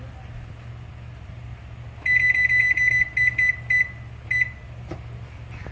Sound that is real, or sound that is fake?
real